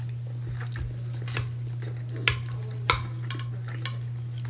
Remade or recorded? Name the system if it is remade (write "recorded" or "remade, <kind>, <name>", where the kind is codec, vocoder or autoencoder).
recorded